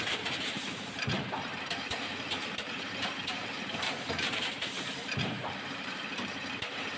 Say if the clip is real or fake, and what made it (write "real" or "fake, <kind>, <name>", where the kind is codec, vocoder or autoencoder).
fake, vocoder, BigVGAN v2